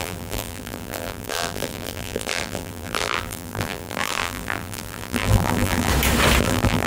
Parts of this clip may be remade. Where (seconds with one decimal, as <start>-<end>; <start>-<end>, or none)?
0.0-5.9; 6.4-6.9